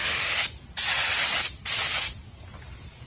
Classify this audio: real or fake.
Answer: real